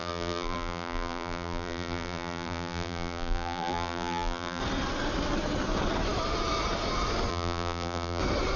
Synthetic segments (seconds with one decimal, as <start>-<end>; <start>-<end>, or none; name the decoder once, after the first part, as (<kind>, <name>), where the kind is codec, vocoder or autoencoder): 0.0-4.6 (vocoder, BigVGAN v2); 7.3-8.2